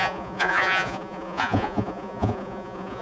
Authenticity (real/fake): fake